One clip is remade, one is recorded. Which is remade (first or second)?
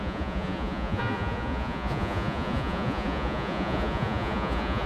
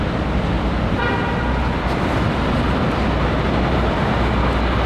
first